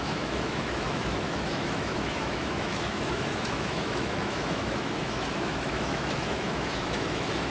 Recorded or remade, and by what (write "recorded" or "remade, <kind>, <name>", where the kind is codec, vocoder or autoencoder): remade, autoencoder, DAC-VAE